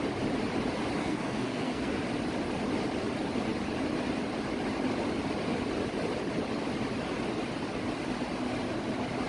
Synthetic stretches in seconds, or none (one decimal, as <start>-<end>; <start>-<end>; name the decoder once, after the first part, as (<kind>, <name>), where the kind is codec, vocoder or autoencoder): 1.0-2.0 (codec, SNAC)